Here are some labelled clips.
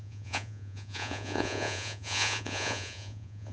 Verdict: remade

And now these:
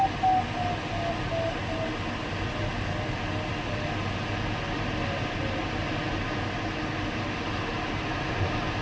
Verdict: recorded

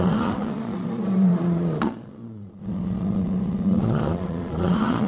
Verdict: remade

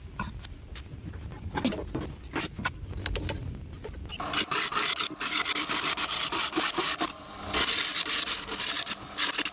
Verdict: recorded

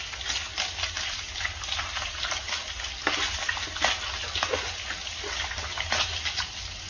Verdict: recorded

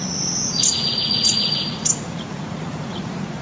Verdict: remade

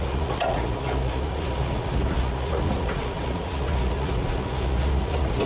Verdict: remade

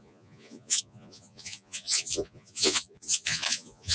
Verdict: remade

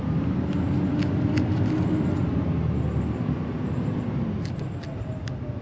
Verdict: recorded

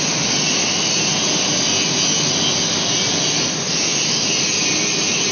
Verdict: recorded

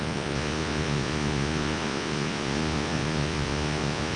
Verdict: remade